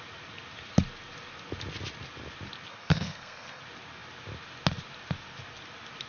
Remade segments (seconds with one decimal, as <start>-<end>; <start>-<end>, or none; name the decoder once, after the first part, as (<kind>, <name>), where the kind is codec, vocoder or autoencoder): 2.7-3.6 (codec, SNAC)